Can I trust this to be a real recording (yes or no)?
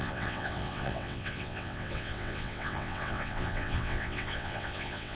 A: no